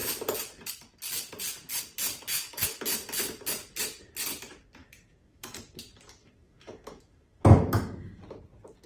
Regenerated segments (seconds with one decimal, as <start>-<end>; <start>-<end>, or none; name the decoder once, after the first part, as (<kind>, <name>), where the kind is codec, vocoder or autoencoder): 2.3-2.8 (autoencoder, DAC-VAE); 4.8-5.8; 6.2-8.2